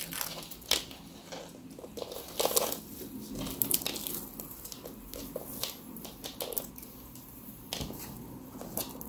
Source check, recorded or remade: recorded